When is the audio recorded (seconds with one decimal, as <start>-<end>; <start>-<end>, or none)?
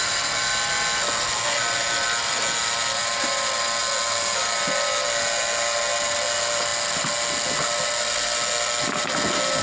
0.0-9.6